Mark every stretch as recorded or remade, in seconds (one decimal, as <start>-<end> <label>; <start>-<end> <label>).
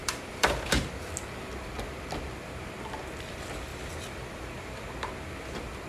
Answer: 0.0-1.0 remade; 1.0-3.7 recorded; 3.7-4.9 remade; 4.9-5.9 recorded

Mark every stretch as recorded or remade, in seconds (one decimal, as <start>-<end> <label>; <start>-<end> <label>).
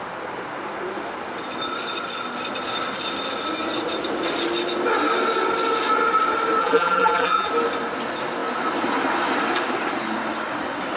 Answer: 0.0-6.6 recorded; 6.6-7.5 remade; 7.5-11.0 recorded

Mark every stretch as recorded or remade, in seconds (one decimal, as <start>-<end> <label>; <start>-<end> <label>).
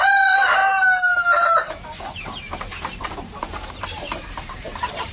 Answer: 0.0-5.1 remade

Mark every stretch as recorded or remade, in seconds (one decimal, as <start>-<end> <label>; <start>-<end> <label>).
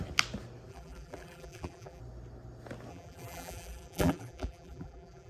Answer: 0.0-0.7 recorded; 0.7-2.0 remade; 2.0-2.9 recorded; 2.9-5.3 remade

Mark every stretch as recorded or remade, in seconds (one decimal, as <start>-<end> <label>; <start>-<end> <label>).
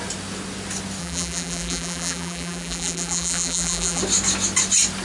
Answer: 0.0-1.0 recorded; 1.0-4.0 remade; 4.0-5.0 recorded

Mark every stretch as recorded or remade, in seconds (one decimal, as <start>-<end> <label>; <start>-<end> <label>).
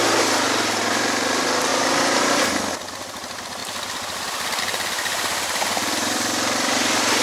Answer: 0.0-1.7 recorded; 1.7-2.5 remade; 2.5-7.2 recorded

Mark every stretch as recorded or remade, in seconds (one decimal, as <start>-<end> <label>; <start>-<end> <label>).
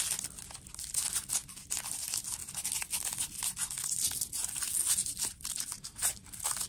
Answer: 0.0-5.0 recorded; 5.0-6.7 remade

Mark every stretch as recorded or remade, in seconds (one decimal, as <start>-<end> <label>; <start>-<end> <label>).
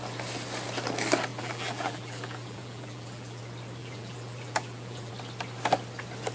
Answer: 0.0-1.3 recorded; 1.3-3.4 remade; 3.4-3.8 recorded; 3.8-5.1 remade; 5.1-6.3 recorded